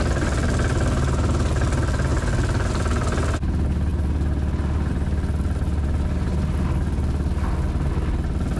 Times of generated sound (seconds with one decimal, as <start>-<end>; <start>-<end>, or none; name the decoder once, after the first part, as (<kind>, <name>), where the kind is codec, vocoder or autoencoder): none